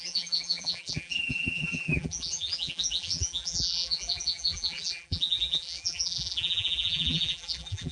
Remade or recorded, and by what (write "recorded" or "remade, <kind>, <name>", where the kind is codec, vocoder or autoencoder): remade, vocoder, BigVGAN v2